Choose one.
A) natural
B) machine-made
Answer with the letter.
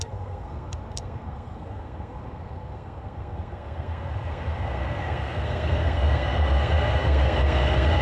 B